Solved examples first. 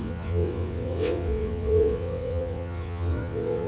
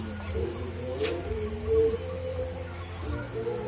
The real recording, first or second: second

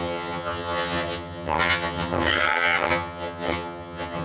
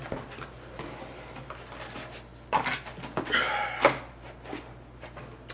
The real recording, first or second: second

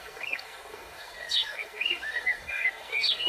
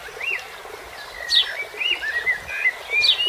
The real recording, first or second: second